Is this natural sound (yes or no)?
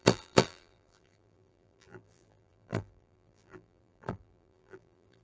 no